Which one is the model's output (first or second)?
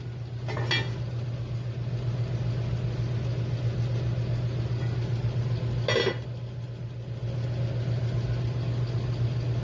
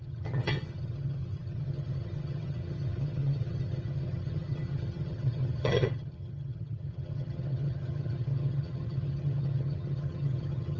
second